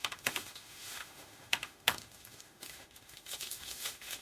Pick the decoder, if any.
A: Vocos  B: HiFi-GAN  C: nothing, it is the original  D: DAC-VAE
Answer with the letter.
D